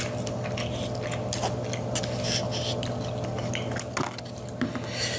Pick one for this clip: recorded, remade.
recorded